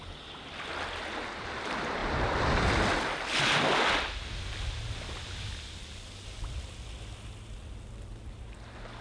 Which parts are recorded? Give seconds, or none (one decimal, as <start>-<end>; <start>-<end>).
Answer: 0.0-9.0